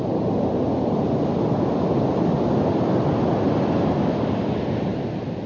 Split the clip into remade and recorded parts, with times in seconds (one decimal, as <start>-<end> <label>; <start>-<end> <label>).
0.0-5.5 recorded